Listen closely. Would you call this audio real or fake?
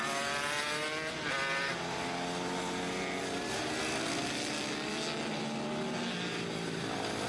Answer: real